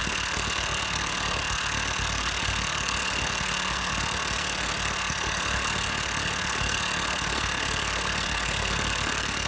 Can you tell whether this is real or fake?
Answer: fake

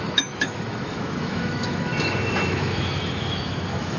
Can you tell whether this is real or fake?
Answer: fake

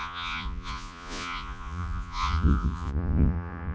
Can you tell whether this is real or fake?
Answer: fake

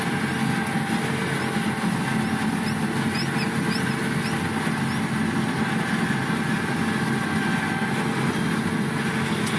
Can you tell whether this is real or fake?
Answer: real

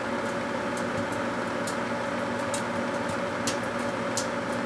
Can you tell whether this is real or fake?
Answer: real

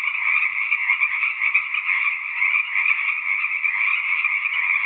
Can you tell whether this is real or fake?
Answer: real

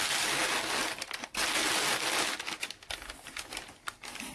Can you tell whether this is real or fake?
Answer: real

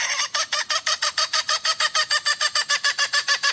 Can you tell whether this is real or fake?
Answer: fake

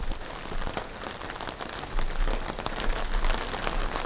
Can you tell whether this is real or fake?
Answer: real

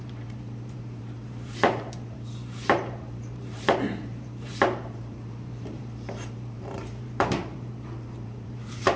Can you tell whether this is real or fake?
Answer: fake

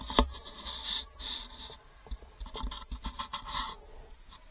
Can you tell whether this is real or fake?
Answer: real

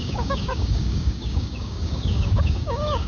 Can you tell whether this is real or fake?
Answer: fake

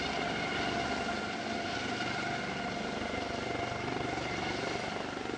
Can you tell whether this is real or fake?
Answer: real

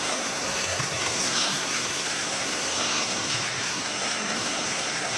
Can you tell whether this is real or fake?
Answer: fake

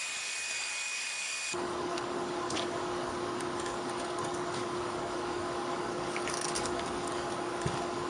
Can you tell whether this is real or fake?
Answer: fake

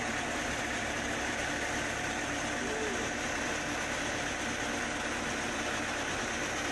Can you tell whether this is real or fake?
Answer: real